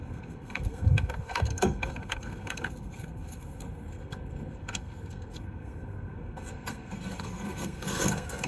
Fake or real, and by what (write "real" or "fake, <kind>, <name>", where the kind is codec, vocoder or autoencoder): fake, codec, SNAC